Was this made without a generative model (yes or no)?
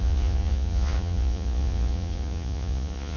no